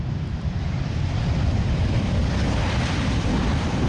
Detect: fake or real fake